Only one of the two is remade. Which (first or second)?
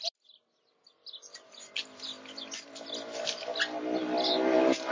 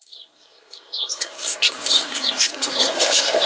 second